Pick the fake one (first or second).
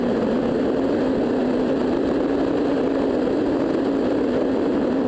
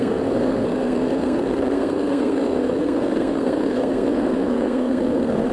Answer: second